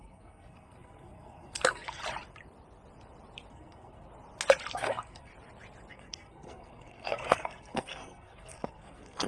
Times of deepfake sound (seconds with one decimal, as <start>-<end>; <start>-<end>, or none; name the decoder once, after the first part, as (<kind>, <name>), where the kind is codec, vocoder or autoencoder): 0.0-2.0 (codec, SNAC); 3.5-4.1; 4.7-5.3; 5.9-9.3

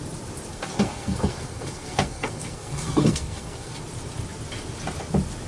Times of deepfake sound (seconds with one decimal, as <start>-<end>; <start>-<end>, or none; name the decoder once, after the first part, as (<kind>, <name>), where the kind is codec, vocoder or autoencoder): 0.5-3.8 (codec, SNAC)

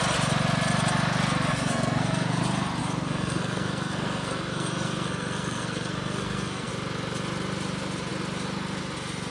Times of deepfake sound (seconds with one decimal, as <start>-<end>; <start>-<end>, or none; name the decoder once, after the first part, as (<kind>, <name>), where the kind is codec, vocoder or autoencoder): 1.5-2.4 (codec, SNAC); 2.8-6.7

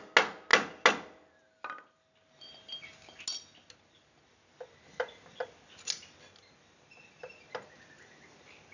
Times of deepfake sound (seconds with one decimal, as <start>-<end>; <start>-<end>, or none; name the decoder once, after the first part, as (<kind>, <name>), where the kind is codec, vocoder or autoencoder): none

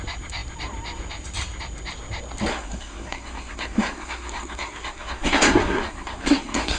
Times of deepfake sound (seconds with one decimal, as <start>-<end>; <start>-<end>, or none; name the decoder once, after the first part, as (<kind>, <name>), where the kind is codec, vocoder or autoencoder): 2.5-6.8 (codec, SNAC)

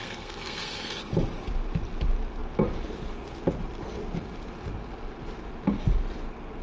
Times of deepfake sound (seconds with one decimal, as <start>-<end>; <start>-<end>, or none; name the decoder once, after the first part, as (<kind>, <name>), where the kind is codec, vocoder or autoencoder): 0.0-1.1 (codec, SNAC)